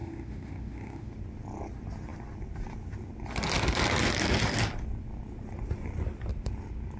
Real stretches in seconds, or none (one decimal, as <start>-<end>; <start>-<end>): 1.1-7.0